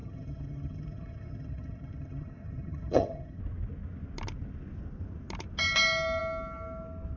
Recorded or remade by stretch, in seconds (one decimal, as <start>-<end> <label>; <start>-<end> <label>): 0.0-3.4 remade; 3.4-7.2 recorded